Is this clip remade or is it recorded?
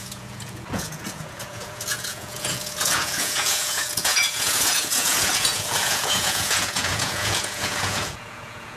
remade